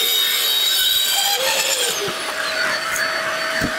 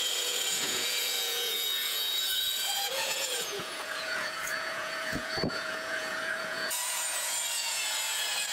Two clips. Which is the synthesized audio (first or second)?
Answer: second